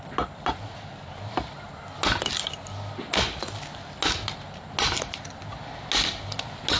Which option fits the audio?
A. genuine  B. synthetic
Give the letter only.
A